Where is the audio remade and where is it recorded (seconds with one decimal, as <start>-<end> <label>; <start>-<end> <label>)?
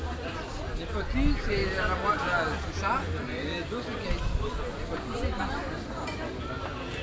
0.0-7.0 recorded